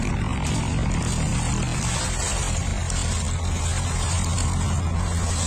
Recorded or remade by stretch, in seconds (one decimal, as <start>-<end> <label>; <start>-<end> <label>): 0.0-5.5 recorded